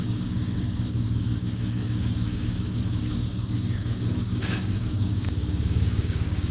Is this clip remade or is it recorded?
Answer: remade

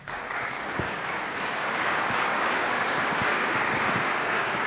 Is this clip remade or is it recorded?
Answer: remade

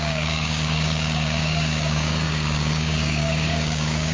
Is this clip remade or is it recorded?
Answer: remade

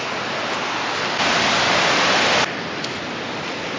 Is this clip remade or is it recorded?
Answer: recorded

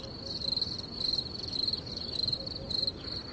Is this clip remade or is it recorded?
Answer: recorded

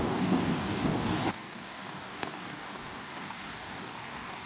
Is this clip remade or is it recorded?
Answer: remade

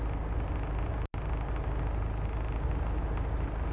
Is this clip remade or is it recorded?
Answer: recorded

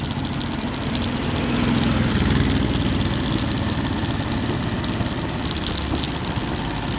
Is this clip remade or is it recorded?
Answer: recorded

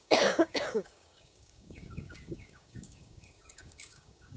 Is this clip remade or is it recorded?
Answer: remade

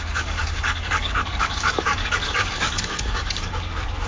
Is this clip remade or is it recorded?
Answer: remade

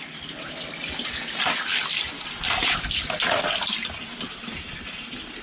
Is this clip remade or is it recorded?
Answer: recorded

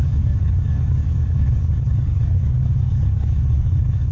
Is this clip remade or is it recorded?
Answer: remade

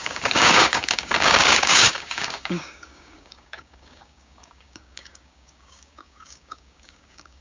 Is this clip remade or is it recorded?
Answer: remade